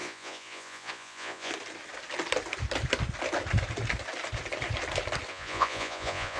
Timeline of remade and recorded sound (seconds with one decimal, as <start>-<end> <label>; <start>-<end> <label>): 0.0-1.5 remade; 1.5-5.3 recorded; 5.3-6.4 remade